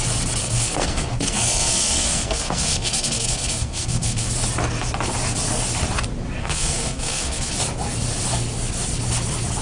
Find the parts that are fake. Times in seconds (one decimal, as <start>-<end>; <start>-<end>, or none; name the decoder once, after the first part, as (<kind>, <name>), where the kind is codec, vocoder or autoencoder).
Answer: 0.4-4.3 (codec, SNAC); 6.4-7.5